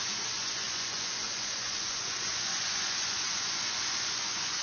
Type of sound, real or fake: fake